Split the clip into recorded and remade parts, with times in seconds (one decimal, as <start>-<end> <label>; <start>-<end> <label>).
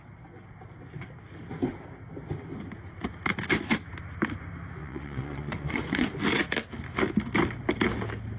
0.0-4.8 recorded; 4.8-6.1 remade; 6.1-8.4 recorded